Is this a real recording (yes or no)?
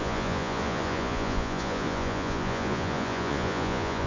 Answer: no